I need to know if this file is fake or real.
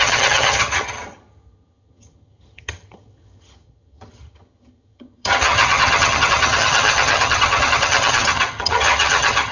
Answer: fake